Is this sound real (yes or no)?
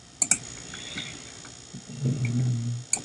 yes